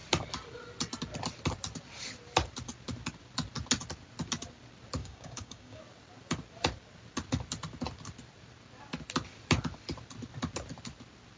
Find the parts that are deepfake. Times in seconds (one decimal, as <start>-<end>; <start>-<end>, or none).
5.0-5.8